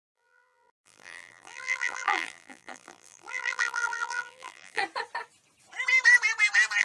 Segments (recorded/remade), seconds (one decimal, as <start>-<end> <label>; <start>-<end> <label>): 0.0-4.8 remade; 4.8-6.8 recorded